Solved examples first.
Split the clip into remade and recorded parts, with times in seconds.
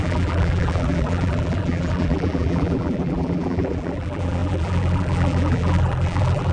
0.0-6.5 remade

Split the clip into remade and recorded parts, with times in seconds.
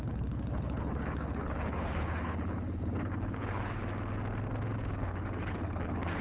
0.0-3.8 remade; 3.8-4.6 recorded; 4.6-6.2 remade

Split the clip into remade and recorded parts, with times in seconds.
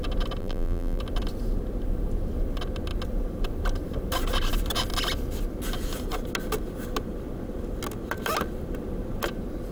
0.0-0.4 recorded; 0.4-1.0 remade; 1.0-9.7 recorded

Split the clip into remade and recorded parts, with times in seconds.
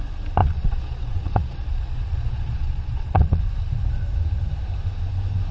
0.0-0.4 recorded; 0.4-3.4 remade; 3.4-5.5 recorded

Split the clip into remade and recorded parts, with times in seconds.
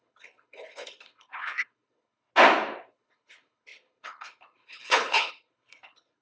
0.0-2.3 remade; 2.3-2.9 recorded; 2.9-6.2 remade